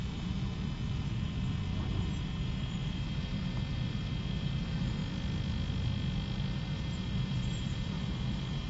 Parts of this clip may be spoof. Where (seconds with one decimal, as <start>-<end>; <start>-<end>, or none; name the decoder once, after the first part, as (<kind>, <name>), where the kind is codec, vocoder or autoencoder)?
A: 0.0-5.0 (vocoder, BigVGAN v2); 6.5-8.7